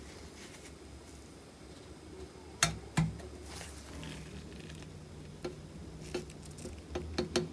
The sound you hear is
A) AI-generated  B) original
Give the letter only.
B